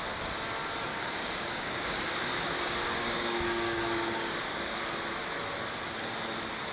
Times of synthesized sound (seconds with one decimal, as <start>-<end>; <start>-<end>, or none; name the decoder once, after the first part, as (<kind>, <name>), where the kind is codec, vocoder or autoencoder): 0.9-4.9 (codec, DAC)